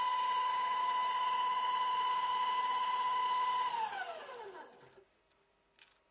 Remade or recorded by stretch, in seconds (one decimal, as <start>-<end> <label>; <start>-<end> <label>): 0.0-6.1 recorded